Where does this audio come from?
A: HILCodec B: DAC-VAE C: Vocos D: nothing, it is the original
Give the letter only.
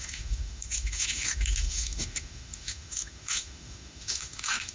B